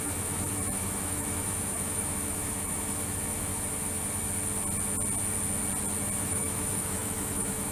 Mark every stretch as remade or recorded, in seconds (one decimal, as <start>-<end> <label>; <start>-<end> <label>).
0.0-3.5 remade; 3.5-6.2 recorded; 6.2-7.7 remade